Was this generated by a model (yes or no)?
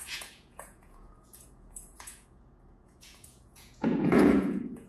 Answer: yes